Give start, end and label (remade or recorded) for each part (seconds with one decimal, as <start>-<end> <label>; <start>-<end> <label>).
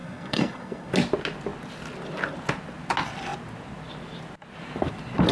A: 0.0-0.9 remade; 0.9-5.3 recorded